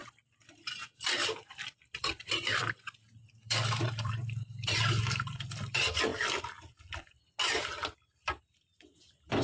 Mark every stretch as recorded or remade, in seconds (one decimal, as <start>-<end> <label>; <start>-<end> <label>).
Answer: 0.0-6.1 remade; 6.1-7.5 recorded; 7.5-9.4 remade